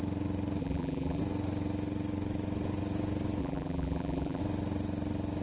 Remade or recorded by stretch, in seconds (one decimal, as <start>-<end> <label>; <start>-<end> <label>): 0.0-0.6 recorded; 0.6-1.2 remade; 1.2-3.4 recorded; 3.4-4.4 remade; 4.4-5.4 recorded